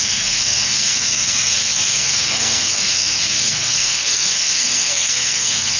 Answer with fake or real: fake